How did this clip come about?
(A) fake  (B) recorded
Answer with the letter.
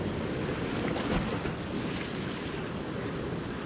B